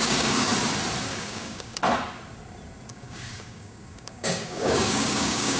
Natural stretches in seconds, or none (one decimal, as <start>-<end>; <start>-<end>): 0.5-1.1; 1.8-2.9